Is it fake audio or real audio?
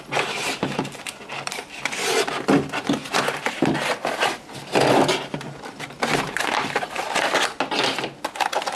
real